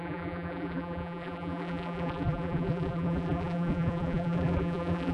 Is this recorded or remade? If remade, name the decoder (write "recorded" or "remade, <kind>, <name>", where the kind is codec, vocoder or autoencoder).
remade, vocoder, BigVGAN v2